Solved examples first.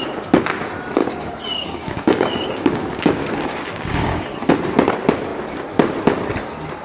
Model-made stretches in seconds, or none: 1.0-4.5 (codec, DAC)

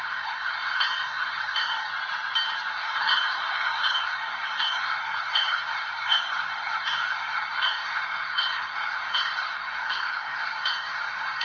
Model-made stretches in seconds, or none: 0.0-1.9 (codec, SNAC); 2.7-11.4

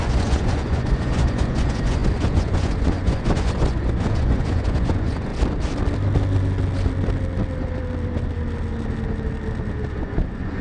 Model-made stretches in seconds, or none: 0.0-5.3 (vocoder, Vocos); 9.9-10.6

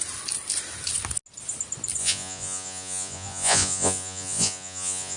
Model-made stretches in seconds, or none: 2.0-5.2 (vocoder, Vocos)

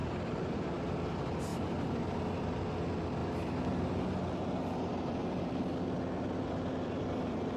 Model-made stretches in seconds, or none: 0.0-0.7 (vocoder, BigVGAN v2); 1.5-2.2

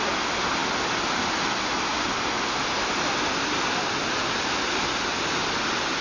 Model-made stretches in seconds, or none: none